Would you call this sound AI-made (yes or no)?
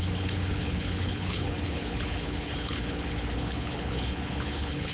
yes